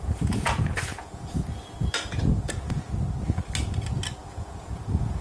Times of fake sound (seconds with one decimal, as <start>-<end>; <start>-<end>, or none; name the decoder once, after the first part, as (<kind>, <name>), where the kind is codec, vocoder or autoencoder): 0.0-2.9 (vocoder, Vocos); 4.2-5.2